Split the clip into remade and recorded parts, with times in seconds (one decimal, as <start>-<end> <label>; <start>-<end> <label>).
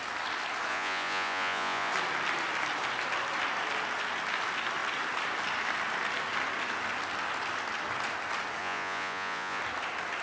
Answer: 0.0-0.7 recorded; 0.7-1.9 remade; 1.9-8.6 recorded; 8.6-9.6 remade; 9.6-10.2 recorded